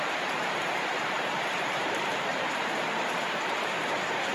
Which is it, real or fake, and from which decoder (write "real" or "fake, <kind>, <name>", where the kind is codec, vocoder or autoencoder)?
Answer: fake, vocoder, BigVGAN v2